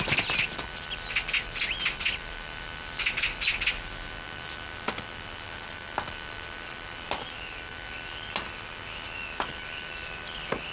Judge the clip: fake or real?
real